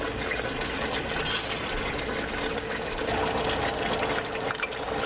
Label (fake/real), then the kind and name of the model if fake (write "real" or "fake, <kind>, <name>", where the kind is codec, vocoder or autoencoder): real